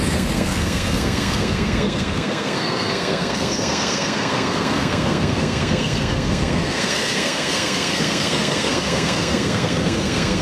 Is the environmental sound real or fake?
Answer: fake